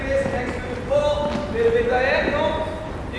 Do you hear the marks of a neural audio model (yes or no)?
no